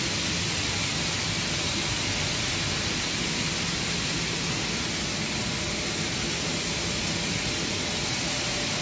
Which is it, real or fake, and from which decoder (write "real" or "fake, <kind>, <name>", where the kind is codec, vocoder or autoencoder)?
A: real